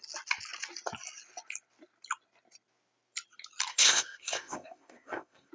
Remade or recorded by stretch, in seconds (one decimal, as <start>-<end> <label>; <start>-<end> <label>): 0.0-3.7 recorded; 3.7-5.5 remade